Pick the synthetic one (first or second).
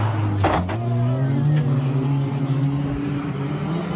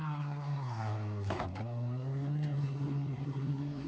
second